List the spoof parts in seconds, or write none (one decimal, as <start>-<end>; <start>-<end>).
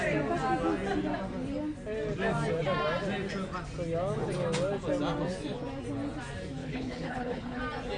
6.6-7.6